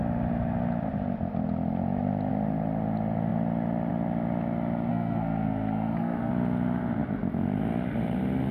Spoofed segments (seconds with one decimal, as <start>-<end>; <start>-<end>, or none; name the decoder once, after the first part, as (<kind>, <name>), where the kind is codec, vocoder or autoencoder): 4.9-6.3 (codec, SNAC)